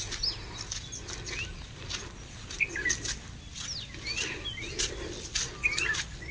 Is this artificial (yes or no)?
no